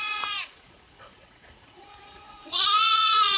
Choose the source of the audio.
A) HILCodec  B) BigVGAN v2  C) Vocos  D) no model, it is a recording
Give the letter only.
C